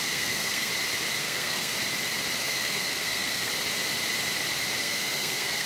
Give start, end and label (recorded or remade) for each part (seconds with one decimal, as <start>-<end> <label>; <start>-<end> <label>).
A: 0.0-0.7 remade; 0.7-1.2 recorded; 1.2-1.7 remade; 1.7-2.4 recorded; 2.4-3.5 remade; 3.5-4.8 recorded; 4.8-5.7 remade